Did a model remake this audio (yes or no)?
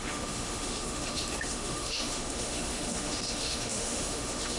yes